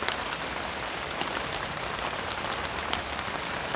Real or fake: real